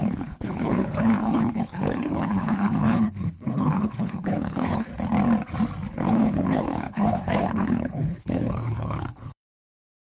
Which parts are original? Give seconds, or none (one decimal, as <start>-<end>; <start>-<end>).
4.9-5.9